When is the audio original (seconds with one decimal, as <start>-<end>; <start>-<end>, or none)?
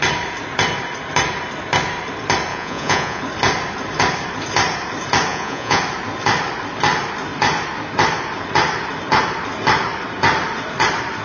0.0-2.5; 3.2-5.3; 5.8-11.2